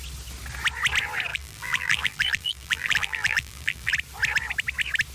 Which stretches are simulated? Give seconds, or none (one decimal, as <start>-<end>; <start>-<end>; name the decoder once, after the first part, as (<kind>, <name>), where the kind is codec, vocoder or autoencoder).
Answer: 1.3-3.9 (vocoder, BigVGAN v2)